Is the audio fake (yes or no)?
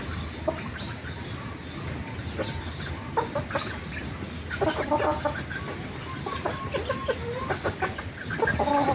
no